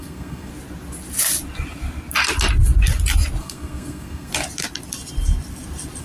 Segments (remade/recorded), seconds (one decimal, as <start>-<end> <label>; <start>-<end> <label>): 0.0-0.5 remade; 0.5-3.4 recorded; 3.4-4.3 remade; 4.3-6.0 recorded